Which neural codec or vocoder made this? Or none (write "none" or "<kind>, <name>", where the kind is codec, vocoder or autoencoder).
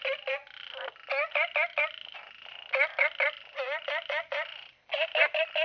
none